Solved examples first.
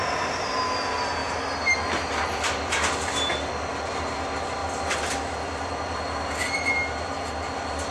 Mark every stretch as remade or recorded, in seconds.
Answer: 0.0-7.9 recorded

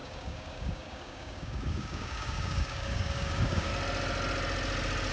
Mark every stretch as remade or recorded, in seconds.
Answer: 0.0-3.7 remade; 3.7-5.1 recorded

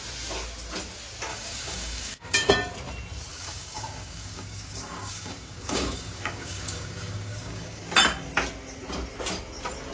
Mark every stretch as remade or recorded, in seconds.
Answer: 0.0-1.3 recorded; 1.3-2.5 remade; 2.5-3.3 recorded; 3.3-7.9 remade; 7.9-9.9 recorded

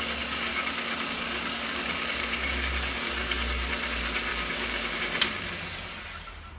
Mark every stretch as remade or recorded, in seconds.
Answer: 0.0-0.5 recorded; 0.5-3.7 remade; 3.7-4.3 recorded; 4.3-5.0 remade; 5.0-6.6 recorded

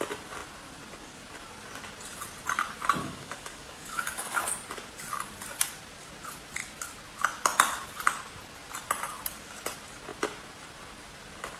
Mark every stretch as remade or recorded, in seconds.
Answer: 0.0-3.0 recorded; 3.0-4.4 remade; 4.4-11.6 recorded

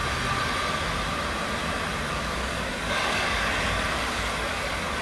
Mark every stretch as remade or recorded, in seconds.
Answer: 0.0-2.1 recorded; 2.1-5.0 remade

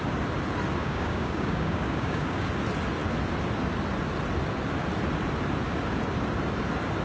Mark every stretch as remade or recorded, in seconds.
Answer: 0.0-0.8 recorded; 0.8-2.5 remade; 2.5-7.0 recorded